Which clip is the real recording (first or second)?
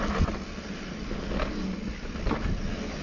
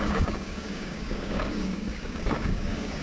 first